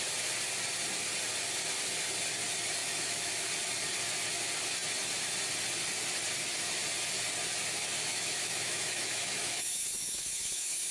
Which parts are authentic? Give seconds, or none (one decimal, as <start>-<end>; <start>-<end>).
0.0-2.8; 3.3-8.1